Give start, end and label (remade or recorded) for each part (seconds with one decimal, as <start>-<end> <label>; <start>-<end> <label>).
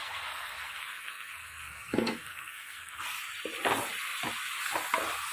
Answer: 0.0-3.2 remade; 3.2-5.3 recorded